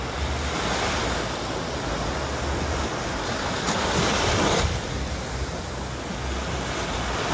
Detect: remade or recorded recorded